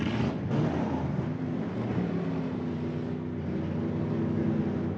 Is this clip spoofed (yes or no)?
no